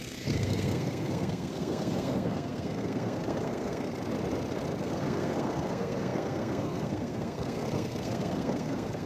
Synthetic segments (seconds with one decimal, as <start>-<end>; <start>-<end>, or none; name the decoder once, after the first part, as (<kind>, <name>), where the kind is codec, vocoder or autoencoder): 0.0-3.9 (codec, SNAC); 4.8-9.1